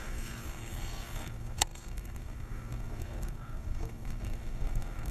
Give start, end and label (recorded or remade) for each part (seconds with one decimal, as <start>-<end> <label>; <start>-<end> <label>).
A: 0.0-5.1 remade

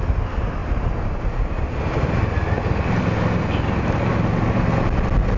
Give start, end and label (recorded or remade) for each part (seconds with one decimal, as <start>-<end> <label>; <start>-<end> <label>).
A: 0.0-5.4 recorded

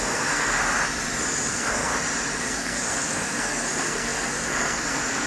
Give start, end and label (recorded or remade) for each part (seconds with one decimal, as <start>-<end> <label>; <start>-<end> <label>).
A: 0.0-0.6 remade; 0.6-1.5 recorded; 1.5-1.9 remade; 1.9-2.4 recorded; 2.4-5.3 remade

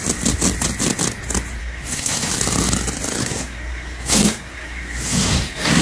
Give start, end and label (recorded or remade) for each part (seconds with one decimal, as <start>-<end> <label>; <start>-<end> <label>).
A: 0.0-1.6 recorded; 1.6-2.3 remade; 2.3-3.2 recorded; 3.2-5.8 remade

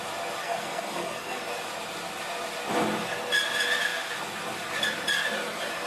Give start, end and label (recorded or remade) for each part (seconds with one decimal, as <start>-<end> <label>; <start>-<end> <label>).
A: 0.0-0.4 recorded; 0.4-1.4 remade; 1.4-5.9 recorded